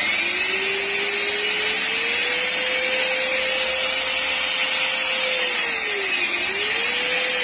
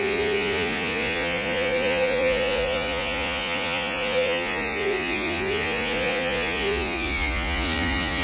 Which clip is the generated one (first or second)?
second